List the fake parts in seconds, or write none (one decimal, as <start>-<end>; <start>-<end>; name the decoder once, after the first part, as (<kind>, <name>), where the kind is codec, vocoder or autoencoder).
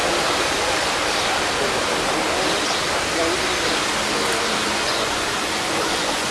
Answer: 4.6-6.3 (vocoder, Vocos)